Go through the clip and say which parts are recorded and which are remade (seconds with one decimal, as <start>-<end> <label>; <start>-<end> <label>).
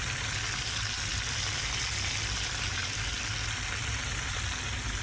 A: 0.0-5.0 recorded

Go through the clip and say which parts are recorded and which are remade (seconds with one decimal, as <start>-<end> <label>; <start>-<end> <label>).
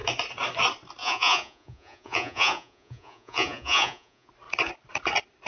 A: 0.0-1.0 recorded; 1.0-4.3 remade; 4.3-5.5 recorded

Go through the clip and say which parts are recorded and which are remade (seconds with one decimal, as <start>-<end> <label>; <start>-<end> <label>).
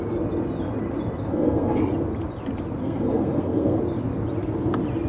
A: 0.0-1.3 recorded; 1.3-1.8 remade; 1.8-2.8 recorded; 2.8-3.8 remade; 3.8-5.1 recorded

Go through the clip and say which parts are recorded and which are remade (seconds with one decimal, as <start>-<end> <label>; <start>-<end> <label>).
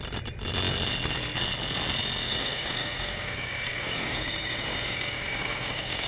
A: 0.0-2.2 recorded; 2.2-6.1 remade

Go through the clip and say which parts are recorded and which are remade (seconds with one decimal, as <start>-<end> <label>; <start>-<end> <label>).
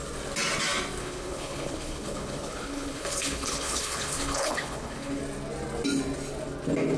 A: 0.0-1.0 recorded; 1.0-5.2 remade; 5.2-7.0 recorded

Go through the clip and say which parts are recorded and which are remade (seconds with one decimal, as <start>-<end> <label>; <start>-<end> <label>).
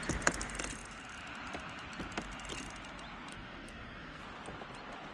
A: 0.0-3.3 recorded; 3.3-4.2 remade; 4.2-5.1 recorded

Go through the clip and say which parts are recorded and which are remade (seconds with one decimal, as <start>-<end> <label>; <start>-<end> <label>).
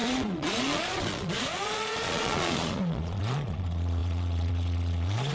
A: 0.0-5.3 remade